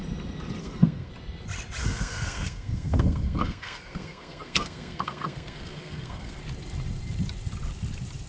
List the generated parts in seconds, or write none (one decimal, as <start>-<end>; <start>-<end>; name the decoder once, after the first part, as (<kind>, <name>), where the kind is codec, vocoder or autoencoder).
0.6-1.1 (codec, SNAC); 1.8-6.4